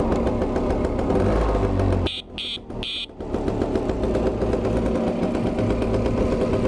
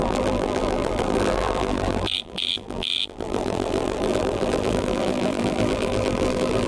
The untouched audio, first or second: first